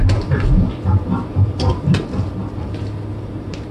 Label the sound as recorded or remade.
recorded